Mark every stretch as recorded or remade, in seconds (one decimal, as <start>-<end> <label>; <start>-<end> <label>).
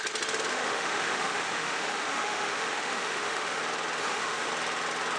0.0-0.5 recorded; 0.5-3.6 remade; 3.6-4.0 recorded; 4.0-4.5 remade; 4.5-5.2 recorded